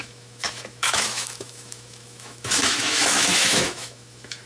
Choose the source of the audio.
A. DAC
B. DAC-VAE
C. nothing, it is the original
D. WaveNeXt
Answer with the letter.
B